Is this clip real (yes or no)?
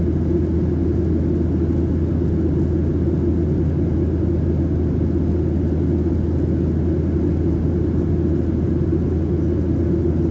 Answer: yes